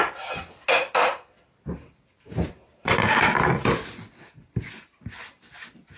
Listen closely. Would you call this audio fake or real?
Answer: real